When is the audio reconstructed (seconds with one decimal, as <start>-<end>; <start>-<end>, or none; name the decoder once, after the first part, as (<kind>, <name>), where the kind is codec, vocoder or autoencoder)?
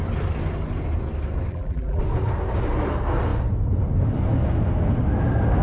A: 1.5-2.0 (vocoder, BigVGAN v2)